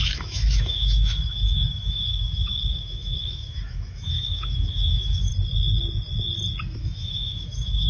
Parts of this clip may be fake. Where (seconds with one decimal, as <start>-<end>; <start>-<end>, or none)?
0.0-5.3; 6.8-7.9